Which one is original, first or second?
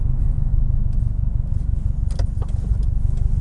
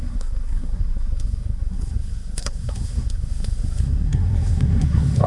first